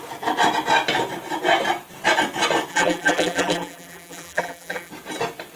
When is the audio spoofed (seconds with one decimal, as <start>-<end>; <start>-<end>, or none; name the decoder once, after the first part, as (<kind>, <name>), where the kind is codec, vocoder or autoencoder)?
2.7-4.9 (vocoder, BigVGAN v2)